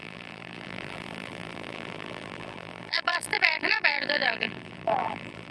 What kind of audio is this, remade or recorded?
remade